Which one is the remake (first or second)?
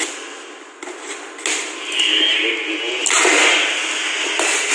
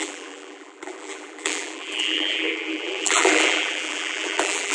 second